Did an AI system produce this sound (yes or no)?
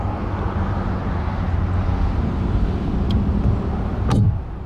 no